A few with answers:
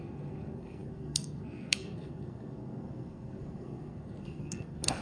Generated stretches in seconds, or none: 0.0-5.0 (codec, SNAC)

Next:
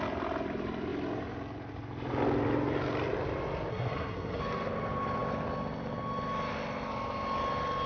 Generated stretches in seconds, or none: 3.7-4.4 (codec, SNAC)